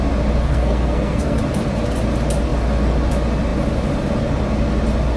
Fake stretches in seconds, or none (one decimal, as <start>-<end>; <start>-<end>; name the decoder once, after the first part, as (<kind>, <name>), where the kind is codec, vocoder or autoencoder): 0.4-1.4 (codec, SNAC)